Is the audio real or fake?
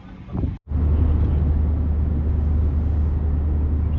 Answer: real